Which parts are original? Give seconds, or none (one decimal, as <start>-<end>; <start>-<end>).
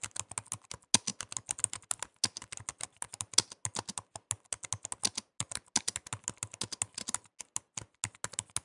0.0-8.6